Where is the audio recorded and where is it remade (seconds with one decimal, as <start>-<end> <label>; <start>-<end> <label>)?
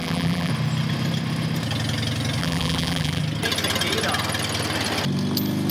0.0-0.5 remade; 0.5-2.4 recorded; 2.4-3.2 remade; 3.2-5.7 recorded